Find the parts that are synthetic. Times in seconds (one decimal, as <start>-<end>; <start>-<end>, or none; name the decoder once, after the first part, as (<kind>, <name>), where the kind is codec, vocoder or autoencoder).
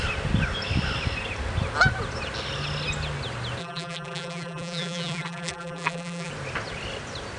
3.6-6.3 (vocoder, BigVGAN v2)